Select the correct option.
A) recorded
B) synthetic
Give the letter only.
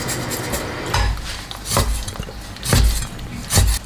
A